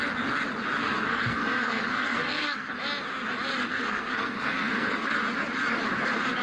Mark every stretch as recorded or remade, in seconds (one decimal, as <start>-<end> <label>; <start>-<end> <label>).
0.0-0.8 recorded; 0.8-2.7 remade; 2.7-3.7 recorded; 3.7-5.1 remade; 5.1-6.4 recorded

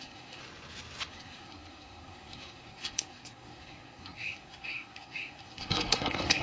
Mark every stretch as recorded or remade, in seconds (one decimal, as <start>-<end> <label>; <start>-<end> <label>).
0.0-0.4 remade; 0.4-1.1 recorded; 1.1-6.4 remade

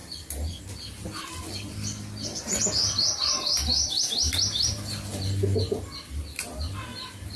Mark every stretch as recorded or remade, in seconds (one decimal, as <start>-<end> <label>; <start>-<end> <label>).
0.0-7.4 recorded

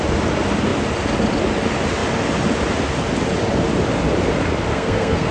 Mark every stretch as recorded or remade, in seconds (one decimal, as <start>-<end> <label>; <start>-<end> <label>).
0.0-4.7 recorded; 4.7-5.3 remade

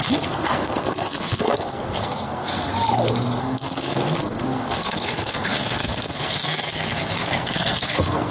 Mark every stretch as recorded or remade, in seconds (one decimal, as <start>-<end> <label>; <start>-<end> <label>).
0.0-2.7 remade; 2.7-3.4 recorded; 3.4-8.3 remade

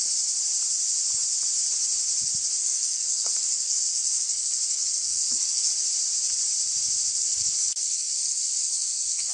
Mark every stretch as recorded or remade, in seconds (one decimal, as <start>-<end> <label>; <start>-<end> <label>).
0.0-2.6 recorded; 2.6-5.7 remade; 5.7-7.1 recorded; 7.1-9.3 remade

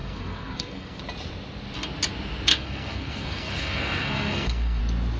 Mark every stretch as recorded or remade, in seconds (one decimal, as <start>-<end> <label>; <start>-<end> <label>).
0.0-1.0 remade; 1.0-2.5 recorded; 2.5-4.8 remade; 4.8-5.2 recorded